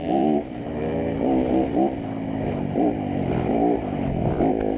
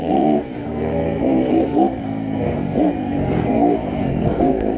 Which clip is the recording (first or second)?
first